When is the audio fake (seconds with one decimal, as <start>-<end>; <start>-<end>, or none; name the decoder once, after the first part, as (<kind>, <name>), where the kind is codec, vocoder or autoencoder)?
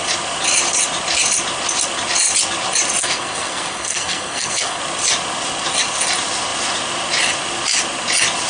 3.0-4.8 (codec, SNAC)